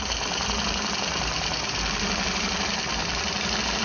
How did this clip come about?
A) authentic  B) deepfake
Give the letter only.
A